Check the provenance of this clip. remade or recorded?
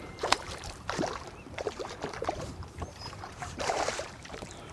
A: remade